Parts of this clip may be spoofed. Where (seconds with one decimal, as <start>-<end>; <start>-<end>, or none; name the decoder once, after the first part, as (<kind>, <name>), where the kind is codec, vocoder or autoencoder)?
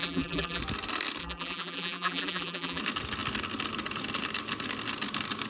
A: 0.0-0.6 (vocoder, BigVGAN v2); 1.2-2.8